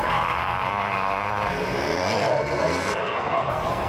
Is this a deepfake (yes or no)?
yes